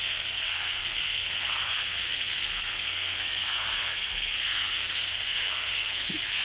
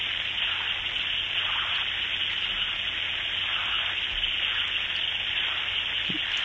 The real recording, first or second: second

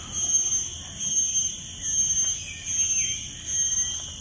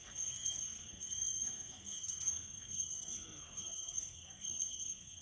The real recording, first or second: first